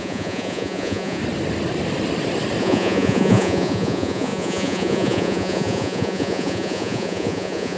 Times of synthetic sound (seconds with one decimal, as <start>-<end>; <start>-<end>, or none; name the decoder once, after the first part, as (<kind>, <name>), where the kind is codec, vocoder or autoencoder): 0.0-1.2 (vocoder, Vocos); 2.6-7.8